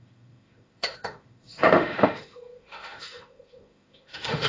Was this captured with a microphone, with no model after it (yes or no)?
no